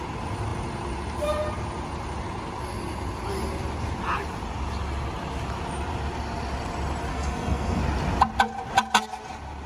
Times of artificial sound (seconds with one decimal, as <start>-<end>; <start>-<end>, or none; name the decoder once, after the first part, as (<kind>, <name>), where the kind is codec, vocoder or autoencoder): 7.1-7.8 (codec, SNAC)